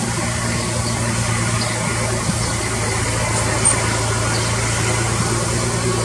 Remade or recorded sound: recorded